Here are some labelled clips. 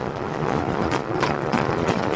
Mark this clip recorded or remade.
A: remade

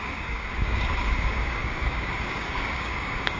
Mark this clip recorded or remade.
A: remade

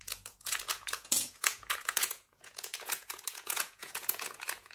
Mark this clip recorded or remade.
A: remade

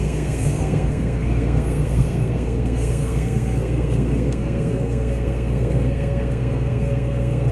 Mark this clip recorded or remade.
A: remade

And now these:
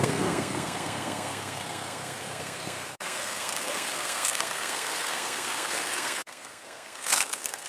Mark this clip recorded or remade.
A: remade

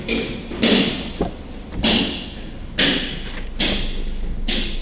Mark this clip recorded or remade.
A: recorded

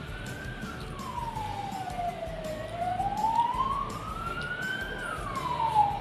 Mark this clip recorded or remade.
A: recorded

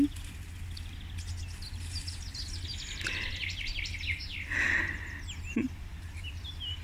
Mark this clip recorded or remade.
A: recorded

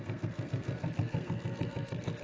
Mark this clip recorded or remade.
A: remade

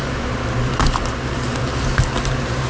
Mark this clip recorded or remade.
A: recorded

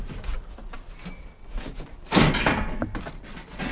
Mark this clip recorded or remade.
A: recorded